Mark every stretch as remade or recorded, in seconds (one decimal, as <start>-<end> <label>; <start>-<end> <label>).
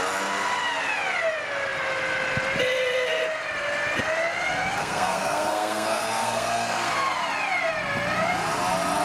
0.0-4.8 recorded; 4.8-6.9 remade; 6.9-9.0 recorded